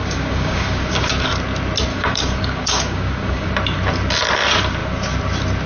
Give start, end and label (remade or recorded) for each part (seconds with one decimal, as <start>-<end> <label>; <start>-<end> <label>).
0.0-1.0 remade; 1.0-1.9 recorded; 1.9-3.5 remade; 3.5-5.7 recorded